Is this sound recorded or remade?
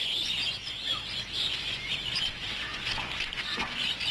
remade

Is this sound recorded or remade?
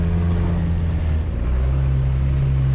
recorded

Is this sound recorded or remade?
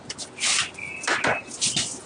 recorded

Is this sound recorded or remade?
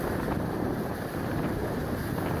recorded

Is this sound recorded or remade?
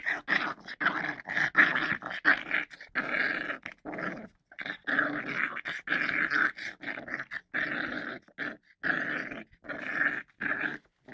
recorded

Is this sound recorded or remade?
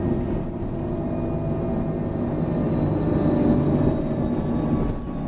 recorded